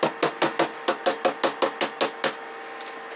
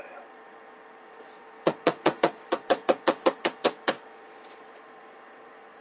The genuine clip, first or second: first